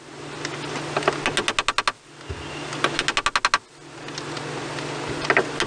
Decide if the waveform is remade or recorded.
recorded